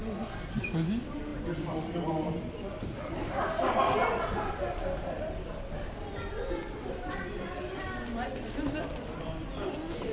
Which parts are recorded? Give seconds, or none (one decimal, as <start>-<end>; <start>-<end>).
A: 0.5-10.1